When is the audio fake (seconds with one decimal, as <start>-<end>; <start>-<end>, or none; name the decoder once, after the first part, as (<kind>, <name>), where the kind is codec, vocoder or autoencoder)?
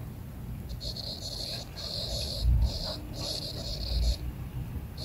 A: none